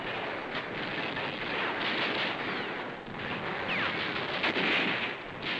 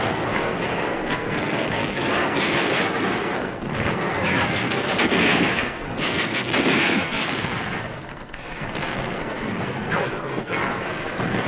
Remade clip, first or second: second